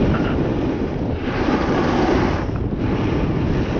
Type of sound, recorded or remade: remade